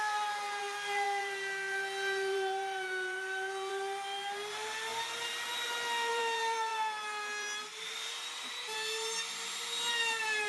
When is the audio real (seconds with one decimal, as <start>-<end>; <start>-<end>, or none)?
none